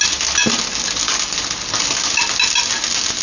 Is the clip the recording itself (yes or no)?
yes